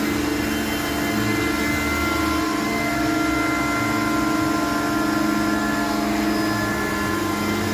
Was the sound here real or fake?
real